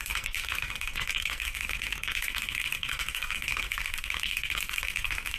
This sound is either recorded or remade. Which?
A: remade